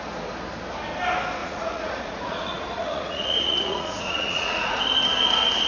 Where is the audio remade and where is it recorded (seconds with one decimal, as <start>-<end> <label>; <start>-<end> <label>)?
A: 0.0-1.4 recorded; 1.4-4.8 remade; 4.8-5.7 recorded